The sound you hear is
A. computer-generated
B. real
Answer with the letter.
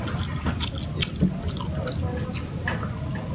B